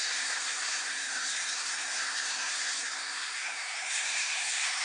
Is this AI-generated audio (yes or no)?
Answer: yes